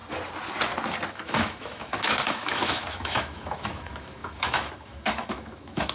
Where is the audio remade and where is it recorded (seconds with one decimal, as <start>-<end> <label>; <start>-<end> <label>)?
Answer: 0.0-1.1 recorded; 1.1-5.9 remade